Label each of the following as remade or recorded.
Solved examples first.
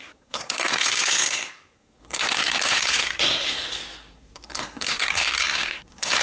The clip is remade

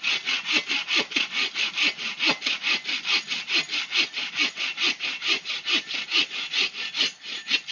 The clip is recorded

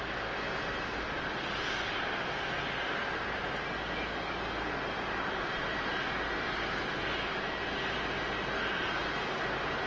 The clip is recorded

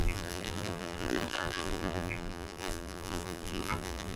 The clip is remade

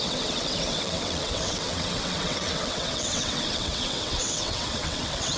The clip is remade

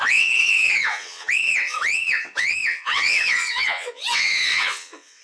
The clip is remade